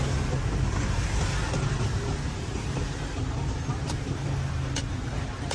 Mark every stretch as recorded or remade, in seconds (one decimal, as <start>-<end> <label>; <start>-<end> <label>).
0.0-4.8 recorded; 4.8-5.5 remade